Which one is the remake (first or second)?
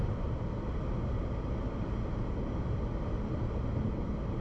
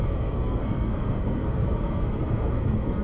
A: second